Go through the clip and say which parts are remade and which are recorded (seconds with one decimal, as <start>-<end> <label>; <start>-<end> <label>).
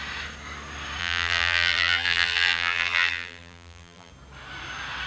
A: 0.0-1.0 recorded; 1.0-4.1 remade; 4.1-5.1 recorded